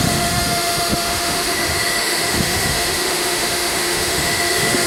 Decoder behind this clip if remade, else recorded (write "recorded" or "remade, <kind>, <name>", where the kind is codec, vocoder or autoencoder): remade, autoencoder, DAC-VAE